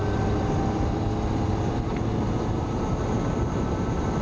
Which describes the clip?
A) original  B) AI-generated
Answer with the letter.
A